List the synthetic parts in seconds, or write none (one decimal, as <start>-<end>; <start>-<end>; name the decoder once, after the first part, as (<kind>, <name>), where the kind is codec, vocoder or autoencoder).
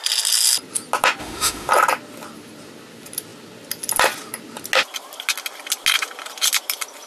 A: 1.2-1.7 (autoencoder, DAC-VAE)